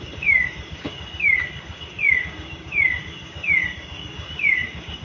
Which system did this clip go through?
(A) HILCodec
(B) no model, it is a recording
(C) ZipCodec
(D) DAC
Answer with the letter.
D